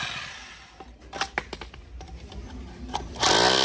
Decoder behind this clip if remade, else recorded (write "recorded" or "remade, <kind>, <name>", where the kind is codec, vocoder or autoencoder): recorded